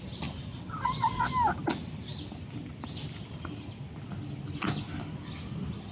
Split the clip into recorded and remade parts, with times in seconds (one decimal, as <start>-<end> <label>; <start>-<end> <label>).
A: 0.0-0.5 recorded; 0.5-1.3 remade; 1.3-5.9 recorded